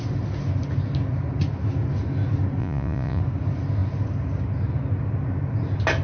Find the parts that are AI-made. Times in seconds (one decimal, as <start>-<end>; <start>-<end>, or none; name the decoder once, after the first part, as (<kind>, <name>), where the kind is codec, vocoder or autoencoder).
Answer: 2.6-3.2 (vocoder, Vocos)